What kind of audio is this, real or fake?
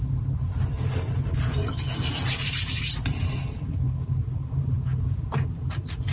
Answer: real